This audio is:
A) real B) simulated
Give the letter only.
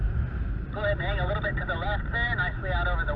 A